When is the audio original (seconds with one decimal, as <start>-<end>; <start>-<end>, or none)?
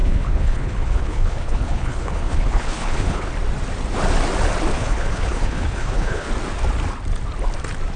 3.3-4.7; 6.3-8.0